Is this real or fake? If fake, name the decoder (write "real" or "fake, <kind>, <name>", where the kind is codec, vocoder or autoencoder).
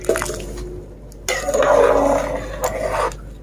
real